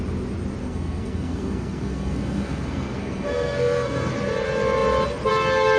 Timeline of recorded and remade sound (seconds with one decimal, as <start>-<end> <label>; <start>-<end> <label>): 0.0-0.6 recorded; 0.6-4.1 remade; 4.1-5.8 recorded